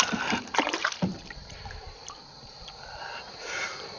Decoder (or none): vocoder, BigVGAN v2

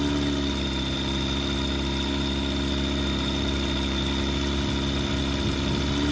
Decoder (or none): none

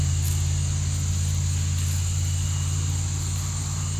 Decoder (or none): none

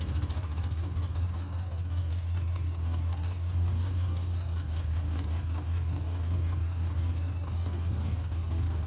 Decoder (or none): codec, DAC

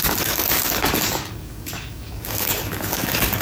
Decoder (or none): codec, DAC